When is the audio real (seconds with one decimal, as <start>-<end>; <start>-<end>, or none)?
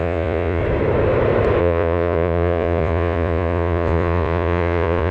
0.6-1.6